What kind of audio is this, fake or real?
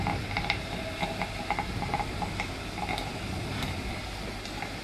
real